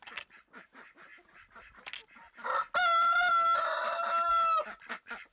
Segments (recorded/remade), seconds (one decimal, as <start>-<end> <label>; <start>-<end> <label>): 0.0-5.3 recorded